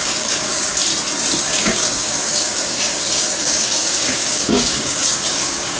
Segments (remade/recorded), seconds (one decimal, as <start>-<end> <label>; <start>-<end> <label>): 0.0-0.8 remade; 0.8-1.4 recorded; 1.4-5.8 remade